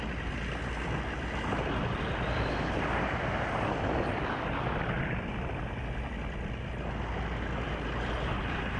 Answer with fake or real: real